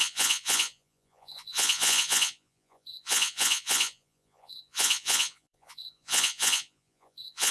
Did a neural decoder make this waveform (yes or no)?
yes